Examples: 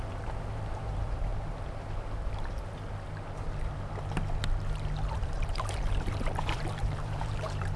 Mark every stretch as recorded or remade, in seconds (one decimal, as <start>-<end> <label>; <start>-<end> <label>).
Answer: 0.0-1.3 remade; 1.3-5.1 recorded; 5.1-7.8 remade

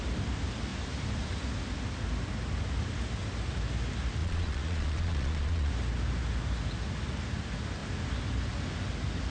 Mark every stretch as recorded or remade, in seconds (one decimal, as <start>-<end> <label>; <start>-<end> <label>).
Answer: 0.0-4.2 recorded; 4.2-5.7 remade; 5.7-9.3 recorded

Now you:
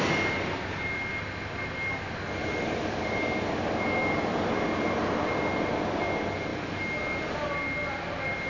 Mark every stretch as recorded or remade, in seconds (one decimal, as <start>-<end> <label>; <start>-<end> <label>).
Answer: 0.0-2.4 recorded; 2.4-4.6 remade; 4.6-8.5 recorded